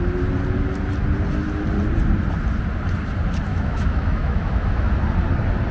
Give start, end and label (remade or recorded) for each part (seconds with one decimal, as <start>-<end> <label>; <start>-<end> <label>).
0.0-3.5 recorded; 3.5-4.9 remade; 4.9-5.7 recorded